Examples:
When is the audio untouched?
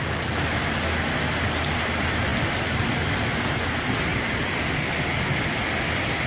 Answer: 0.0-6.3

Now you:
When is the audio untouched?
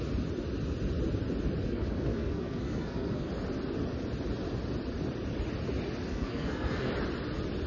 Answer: 0.0-1.6; 3.3-6.1; 6.9-7.7